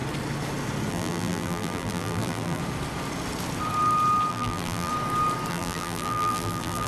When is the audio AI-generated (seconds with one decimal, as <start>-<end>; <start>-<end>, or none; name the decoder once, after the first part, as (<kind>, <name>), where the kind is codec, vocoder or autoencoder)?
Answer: 0.9-2.6 (vocoder, BigVGAN v2); 4.3-4.9; 5.5-6.9